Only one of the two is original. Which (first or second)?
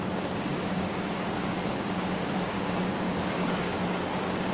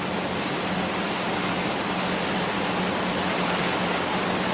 second